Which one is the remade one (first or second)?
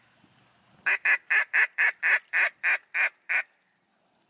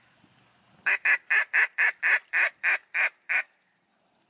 second